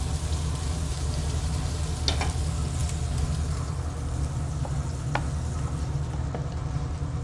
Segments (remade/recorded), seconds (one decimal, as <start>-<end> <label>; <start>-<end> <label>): 0.0-0.9 recorded; 0.9-1.8 remade; 1.8-7.2 recorded